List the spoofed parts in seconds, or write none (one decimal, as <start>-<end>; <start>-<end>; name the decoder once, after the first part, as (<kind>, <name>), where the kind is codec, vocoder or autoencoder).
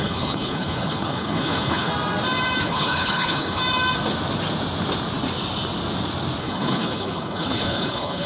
0.0-1.9 (codec, HILCodec); 2.6-3.6; 6.4-8.3